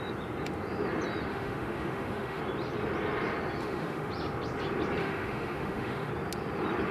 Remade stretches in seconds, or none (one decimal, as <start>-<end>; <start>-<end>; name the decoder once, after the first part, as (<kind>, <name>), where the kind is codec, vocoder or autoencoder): 1.3-2.4 (autoencoder, DAC-VAE); 3.6-4.1; 5.0-6.1